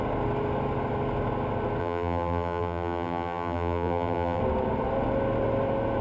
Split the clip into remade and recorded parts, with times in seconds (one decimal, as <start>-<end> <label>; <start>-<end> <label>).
0.0-1.8 recorded; 1.8-4.4 remade; 4.4-6.0 recorded